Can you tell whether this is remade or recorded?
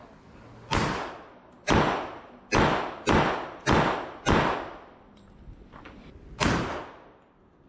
recorded